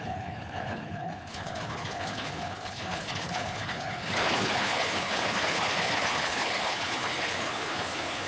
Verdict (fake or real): fake